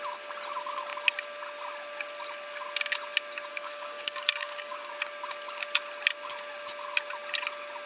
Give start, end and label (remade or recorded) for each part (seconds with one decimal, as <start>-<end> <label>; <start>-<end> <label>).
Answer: 0.0-3.5 recorded; 3.5-4.9 remade; 4.9-7.9 recorded